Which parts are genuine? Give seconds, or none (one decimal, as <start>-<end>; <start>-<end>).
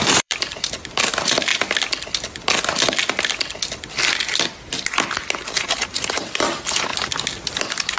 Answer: 1.5-5.6; 6.9-7.6